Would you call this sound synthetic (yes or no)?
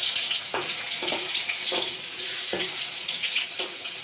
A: yes